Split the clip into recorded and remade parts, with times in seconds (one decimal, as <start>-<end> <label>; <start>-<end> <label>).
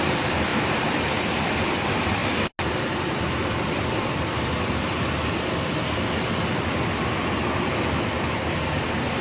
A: 0.0-0.5 recorded; 0.5-1.0 remade; 1.0-9.2 recorded